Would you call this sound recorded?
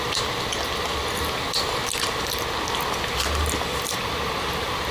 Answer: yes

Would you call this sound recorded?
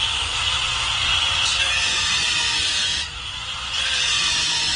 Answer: no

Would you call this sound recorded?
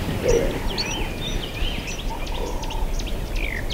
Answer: yes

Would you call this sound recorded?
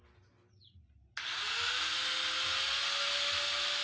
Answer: yes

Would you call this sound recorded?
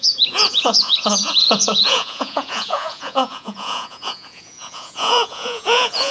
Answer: no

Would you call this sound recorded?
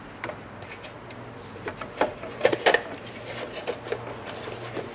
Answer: yes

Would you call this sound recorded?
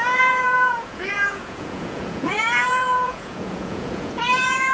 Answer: no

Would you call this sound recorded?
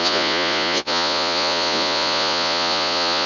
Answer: no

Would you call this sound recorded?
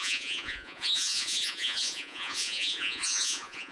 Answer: no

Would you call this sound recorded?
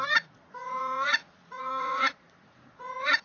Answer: no